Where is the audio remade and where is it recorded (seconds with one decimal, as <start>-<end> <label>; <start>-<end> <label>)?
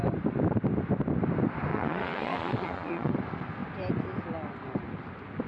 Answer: 0.0-1.7 recorded; 1.7-3.1 remade; 3.1-5.5 recorded